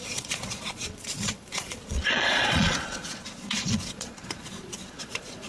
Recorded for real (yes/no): no